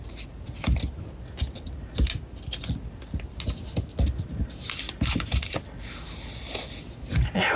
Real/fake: real